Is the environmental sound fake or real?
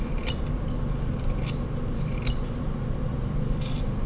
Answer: real